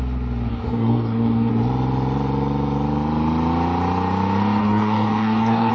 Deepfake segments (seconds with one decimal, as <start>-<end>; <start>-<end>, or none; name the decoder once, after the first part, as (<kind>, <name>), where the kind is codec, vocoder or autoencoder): 0.5-1.5 (codec, DAC); 4.6-5.7